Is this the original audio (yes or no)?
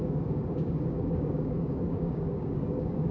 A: no